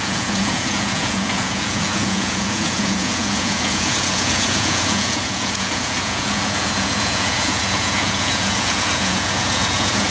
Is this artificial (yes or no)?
yes